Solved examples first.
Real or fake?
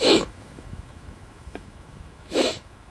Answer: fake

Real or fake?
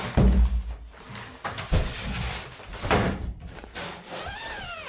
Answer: real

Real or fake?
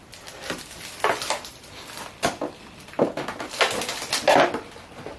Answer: real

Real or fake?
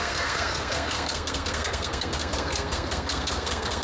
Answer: fake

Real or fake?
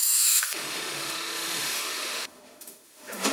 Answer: fake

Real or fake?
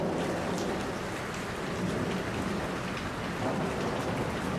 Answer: real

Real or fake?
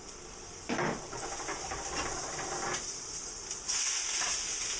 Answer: real